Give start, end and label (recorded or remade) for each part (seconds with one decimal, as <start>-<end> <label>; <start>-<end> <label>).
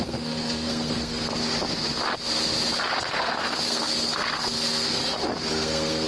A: 0.0-1.3 remade; 1.3-3.0 recorded; 3.0-5.0 remade; 5.0-5.5 recorded; 5.5-6.1 remade